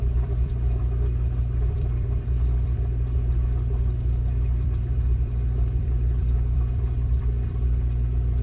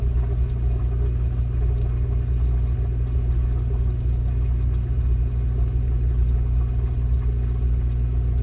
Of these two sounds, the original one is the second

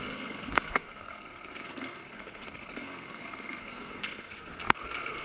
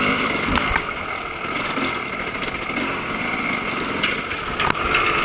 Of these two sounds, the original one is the second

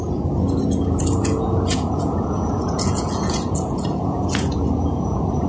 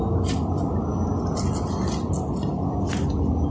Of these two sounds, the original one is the second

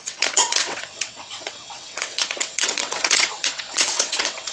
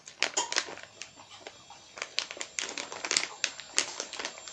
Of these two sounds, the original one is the second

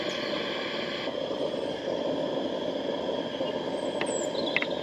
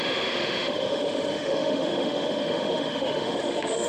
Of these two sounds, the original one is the first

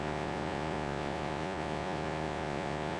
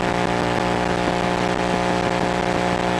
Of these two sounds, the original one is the second